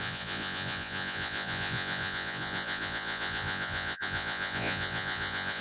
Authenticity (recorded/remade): remade